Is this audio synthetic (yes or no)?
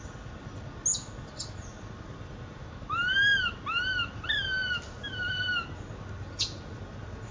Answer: no